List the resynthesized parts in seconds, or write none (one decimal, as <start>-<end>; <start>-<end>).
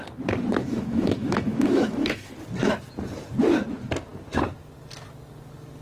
0.6-2.3